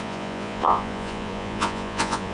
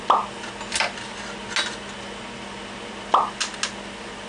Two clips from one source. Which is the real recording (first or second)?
second